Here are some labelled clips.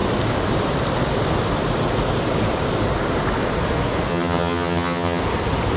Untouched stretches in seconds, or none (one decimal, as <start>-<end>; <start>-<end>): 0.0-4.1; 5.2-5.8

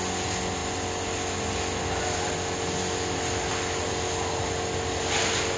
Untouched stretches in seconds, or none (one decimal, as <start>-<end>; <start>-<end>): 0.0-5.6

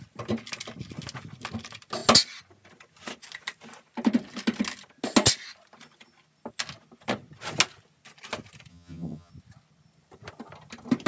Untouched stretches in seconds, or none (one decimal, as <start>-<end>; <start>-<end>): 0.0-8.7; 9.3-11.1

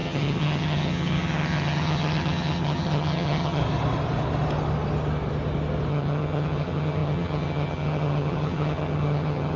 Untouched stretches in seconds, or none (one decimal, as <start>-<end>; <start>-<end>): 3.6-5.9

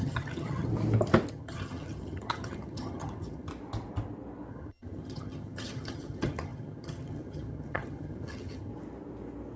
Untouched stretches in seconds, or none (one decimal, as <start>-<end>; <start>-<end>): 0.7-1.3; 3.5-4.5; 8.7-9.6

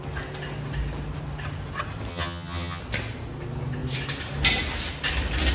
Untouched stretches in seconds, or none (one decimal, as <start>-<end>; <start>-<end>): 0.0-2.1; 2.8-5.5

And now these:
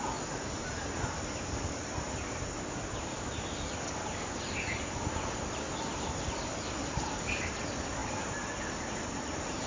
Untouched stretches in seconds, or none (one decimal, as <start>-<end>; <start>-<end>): 0.0-9.7

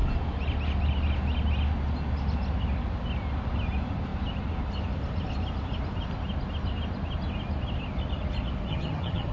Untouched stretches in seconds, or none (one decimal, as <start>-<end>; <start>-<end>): 0.0-8.7